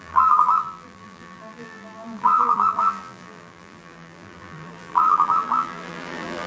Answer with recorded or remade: remade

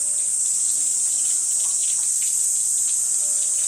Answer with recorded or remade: recorded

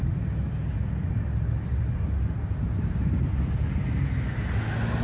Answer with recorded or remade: recorded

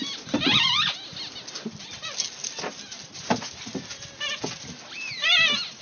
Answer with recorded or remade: recorded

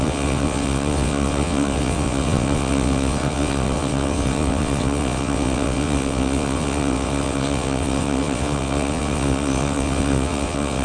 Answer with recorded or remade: remade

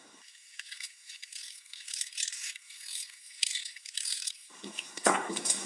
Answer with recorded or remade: remade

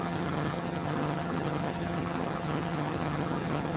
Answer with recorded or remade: remade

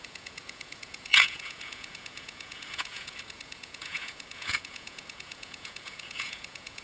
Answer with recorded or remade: remade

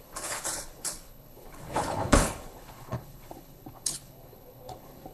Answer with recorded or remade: remade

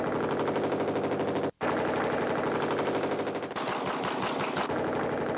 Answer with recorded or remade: recorded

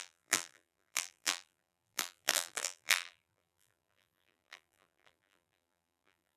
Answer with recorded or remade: remade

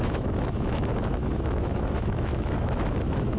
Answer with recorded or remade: remade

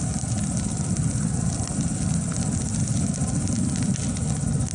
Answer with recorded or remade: recorded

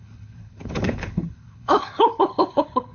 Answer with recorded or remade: remade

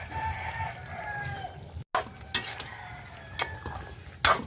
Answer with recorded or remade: recorded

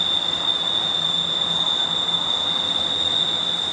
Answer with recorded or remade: recorded